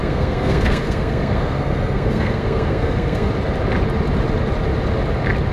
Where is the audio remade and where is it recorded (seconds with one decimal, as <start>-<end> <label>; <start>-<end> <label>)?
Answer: 0.0-3.3 remade; 3.3-5.5 recorded